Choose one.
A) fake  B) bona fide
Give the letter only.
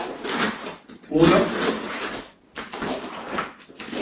B